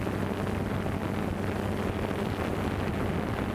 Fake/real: real